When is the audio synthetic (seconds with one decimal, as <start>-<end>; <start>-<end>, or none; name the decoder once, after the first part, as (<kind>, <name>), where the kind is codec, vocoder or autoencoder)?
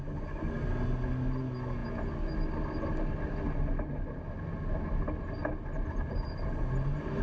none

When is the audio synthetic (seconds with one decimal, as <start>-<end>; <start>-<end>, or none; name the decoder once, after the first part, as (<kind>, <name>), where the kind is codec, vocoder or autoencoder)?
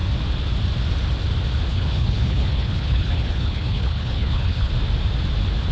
1.7-4.7 (codec, HILCodec)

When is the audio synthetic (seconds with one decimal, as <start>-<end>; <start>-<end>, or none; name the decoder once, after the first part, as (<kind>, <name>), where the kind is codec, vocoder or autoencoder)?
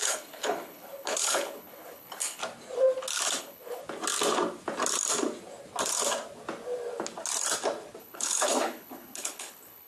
0.0-2.4 (codec, HILCodec); 3.4-3.8; 8.0-9.9